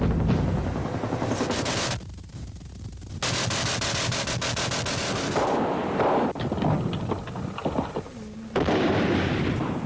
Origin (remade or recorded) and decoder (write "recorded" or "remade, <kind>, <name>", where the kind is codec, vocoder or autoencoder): recorded